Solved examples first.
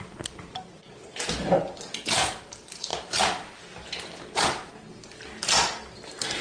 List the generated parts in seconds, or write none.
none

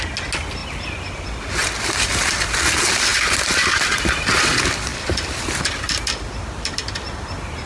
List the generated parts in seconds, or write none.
1.6-2.1 (vocoder, BigVGAN v2); 3.1-4.3; 4.9-5.6